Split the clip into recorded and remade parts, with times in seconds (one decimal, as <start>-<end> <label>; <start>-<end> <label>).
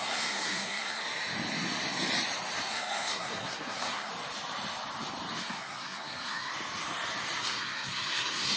0.0-1.0 remade; 1.0-2.7 recorded; 2.7-4.1 remade; 4.1-5.4 recorded; 5.4-6.5 remade; 6.5-7.4 recorded; 7.4-8.6 remade